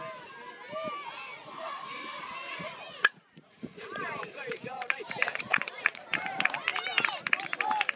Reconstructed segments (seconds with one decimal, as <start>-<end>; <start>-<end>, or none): 1.3-6.1